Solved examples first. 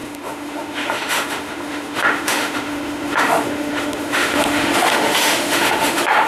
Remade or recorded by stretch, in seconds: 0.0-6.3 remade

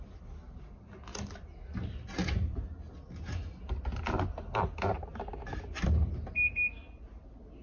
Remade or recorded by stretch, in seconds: 0.0-7.6 recorded

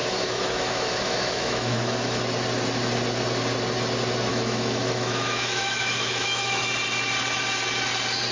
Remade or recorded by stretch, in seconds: 0.0-2.2 remade; 2.2-4.3 recorded; 4.3-6.6 remade; 6.6-8.3 recorded

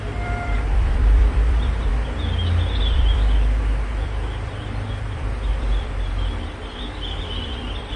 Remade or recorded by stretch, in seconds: 0.0-1.9 remade; 1.9-2.8 recorded; 2.8-8.0 remade

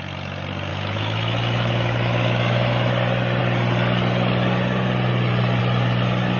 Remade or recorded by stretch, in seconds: 0.0-0.7 recorded; 0.7-2.9 remade; 2.9-6.4 recorded

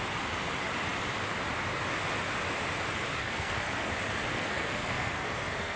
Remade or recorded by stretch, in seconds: 0.0-3.2 recorded; 3.2-3.9 remade; 3.9-4.3 recorded; 4.3-5.8 remade